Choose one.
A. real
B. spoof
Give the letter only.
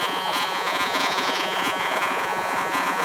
B